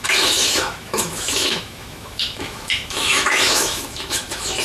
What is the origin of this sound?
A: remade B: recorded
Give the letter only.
A